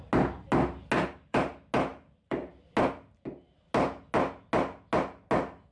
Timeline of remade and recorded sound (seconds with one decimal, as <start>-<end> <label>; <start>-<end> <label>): 0.0-1.0 recorded; 1.0-1.5 remade; 1.5-1.9 recorded; 1.9-2.5 remade; 2.5-5.7 recorded